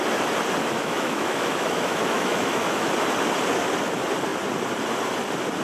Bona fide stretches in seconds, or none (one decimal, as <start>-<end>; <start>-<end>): 0.0-0.6; 2.9-5.6